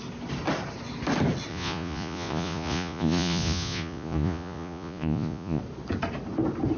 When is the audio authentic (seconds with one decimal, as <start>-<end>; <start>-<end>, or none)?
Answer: 0.0-1.5; 5.6-6.8